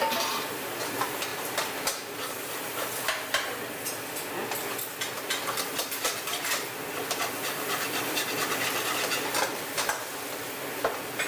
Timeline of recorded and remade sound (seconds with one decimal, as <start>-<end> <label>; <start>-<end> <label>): 0.0-1.3 recorded; 1.3-2.5 remade; 2.5-9.5 recorded; 9.5-10.1 remade; 10.1-11.3 recorded